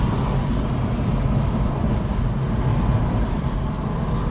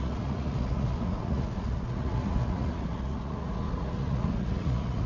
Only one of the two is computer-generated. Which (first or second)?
second